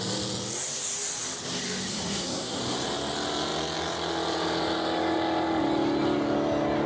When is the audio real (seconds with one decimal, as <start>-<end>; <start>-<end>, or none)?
0.0-1.9; 2.6-6.9